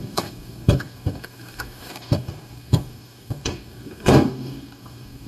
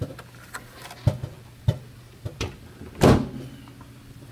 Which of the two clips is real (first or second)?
second